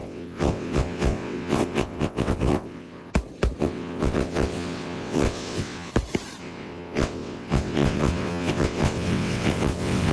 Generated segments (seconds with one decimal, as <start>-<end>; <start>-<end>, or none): 0.0-3.1; 3.6-5.9; 6.4-10.1